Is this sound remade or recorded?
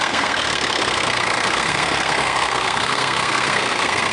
remade